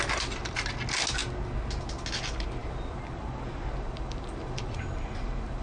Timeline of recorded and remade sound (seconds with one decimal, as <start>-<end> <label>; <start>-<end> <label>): 0.0-2.6 recorded; 2.6-5.6 remade